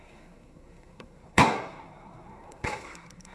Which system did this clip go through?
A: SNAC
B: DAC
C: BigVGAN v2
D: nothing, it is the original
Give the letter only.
A